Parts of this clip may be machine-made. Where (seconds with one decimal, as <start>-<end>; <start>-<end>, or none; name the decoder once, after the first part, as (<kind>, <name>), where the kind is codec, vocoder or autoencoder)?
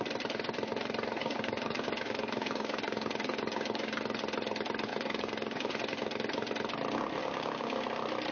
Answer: 1.2-4.0 (codec, DAC); 4.9-5.7; 7.2-7.8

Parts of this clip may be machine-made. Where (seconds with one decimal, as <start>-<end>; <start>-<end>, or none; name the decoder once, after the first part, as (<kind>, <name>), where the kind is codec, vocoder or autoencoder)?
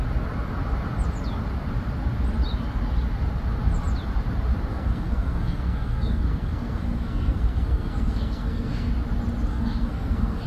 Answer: 4.7-8.9 (codec, SNAC); 9.5-10.5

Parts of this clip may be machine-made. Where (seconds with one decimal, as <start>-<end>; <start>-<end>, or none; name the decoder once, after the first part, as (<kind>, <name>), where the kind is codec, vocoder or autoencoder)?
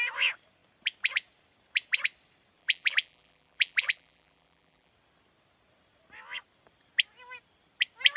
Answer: 2.6-4.9 (vocoder, BigVGAN v2)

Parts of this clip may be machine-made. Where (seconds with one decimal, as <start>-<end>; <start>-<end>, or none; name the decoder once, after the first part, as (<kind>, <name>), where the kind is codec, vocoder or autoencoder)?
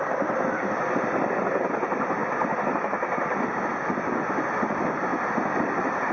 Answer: none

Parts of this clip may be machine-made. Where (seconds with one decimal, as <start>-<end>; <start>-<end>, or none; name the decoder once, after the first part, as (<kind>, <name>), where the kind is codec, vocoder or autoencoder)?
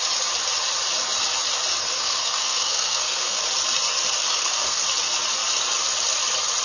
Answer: 1.8-3.4 (codec, SNAC); 4.2-4.8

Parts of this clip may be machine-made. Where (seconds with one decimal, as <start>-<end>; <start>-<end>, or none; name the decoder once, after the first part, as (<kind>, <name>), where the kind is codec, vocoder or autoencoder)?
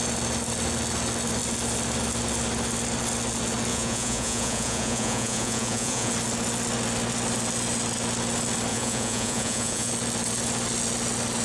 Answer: 3.7-6.1 (vocoder, Vocos); 8.7-9.9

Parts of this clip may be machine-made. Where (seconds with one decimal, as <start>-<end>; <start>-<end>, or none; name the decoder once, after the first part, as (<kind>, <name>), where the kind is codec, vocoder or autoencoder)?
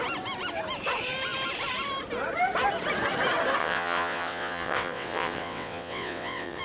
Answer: 3.6-6.6 (vocoder, WaveNeXt)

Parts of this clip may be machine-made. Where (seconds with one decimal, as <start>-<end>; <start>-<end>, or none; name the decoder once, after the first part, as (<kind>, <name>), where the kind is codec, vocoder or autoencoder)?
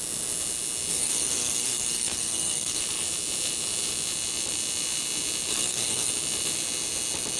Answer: 0.9-2.8 (codec, SNAC); 5.5-6.1